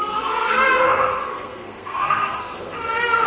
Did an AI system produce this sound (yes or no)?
yes